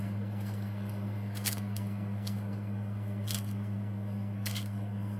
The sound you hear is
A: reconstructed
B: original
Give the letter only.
A